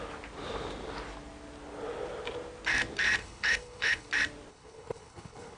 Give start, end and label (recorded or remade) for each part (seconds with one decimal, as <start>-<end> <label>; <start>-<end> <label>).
0.0-3.2 recorded; 3.2-4.1 remade; 4.1-4.5 recorded; 4.5-5.6 remade